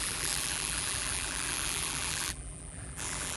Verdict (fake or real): fake